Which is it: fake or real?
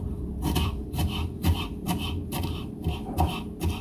fake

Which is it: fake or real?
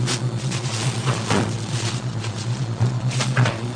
fake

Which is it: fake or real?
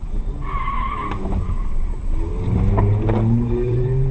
fake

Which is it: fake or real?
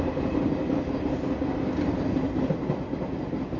real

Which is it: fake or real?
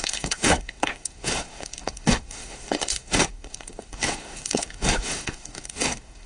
fake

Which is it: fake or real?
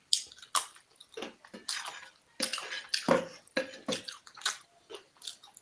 real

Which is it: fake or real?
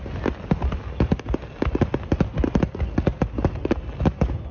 real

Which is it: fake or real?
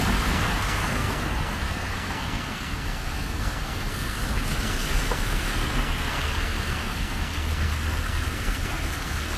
fake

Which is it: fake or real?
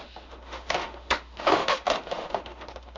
fake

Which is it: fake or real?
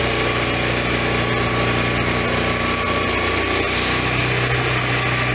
real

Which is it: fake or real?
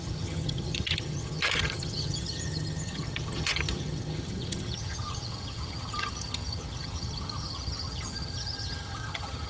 fake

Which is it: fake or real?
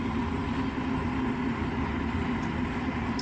real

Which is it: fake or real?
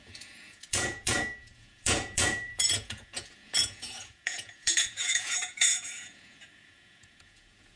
fake